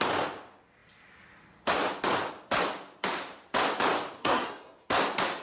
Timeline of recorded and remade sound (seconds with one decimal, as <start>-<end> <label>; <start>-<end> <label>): 0.0-4.2 recorded; 4.2-4.9 remade; 4.9-5.4 recorded